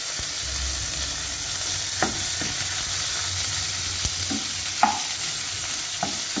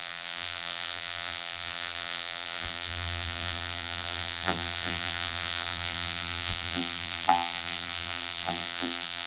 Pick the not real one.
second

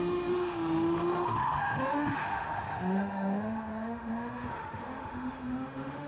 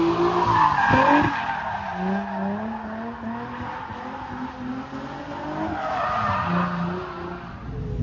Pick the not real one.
first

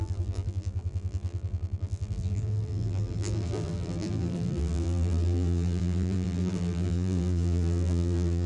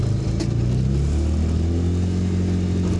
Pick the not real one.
first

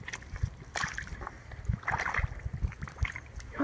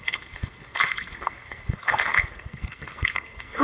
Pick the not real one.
second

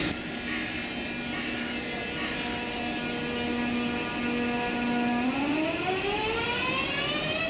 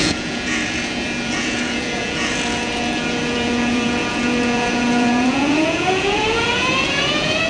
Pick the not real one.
second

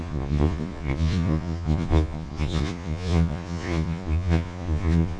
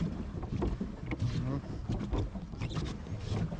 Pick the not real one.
first